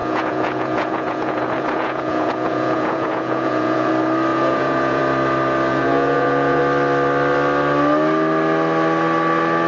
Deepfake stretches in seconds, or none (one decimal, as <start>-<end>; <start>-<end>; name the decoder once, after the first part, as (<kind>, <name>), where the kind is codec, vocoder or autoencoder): 0.0-3.9 (vocoder, Vocos); 4.3-5.0; 5.7-6.6

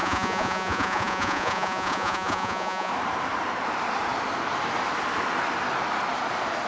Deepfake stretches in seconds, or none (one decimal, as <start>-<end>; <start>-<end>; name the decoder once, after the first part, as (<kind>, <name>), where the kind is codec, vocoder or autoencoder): 0.0-2.9 (vocoder, Vocos)

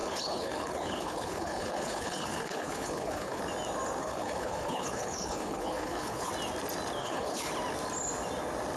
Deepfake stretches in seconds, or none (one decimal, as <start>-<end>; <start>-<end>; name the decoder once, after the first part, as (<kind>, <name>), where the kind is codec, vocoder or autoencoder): 0.0-3.4 (codec, HILCodec); 4.0-6.3; 7.0-7.5